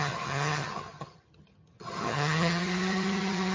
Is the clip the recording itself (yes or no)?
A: no